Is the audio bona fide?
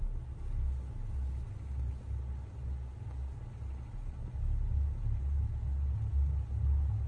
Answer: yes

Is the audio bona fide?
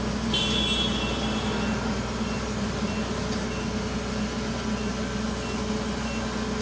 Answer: yes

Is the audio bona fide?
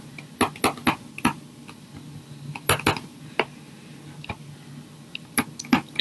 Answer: yes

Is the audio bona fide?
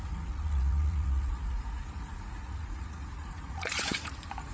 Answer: no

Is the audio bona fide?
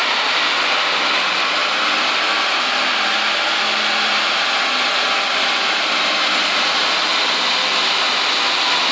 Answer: yes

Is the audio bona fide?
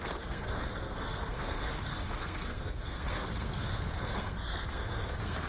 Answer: no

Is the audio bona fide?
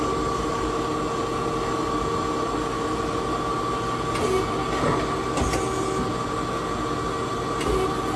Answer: yes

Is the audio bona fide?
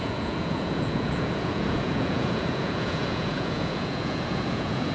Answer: no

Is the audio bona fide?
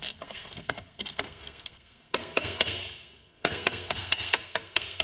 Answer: no